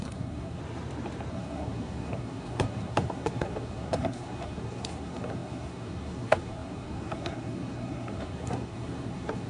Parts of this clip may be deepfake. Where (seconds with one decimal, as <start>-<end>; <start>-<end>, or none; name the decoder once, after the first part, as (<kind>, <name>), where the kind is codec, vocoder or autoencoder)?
0.0-0.6 (codec, SNAC); 1.3-9.5